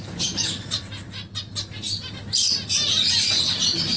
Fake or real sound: real